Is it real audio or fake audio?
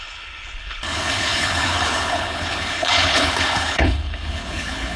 fake